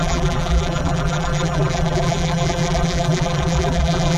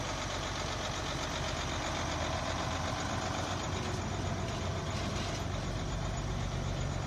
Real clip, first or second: second